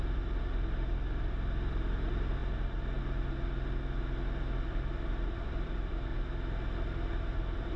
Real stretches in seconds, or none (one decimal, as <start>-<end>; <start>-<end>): 2.4-4.7; 6.1-7.1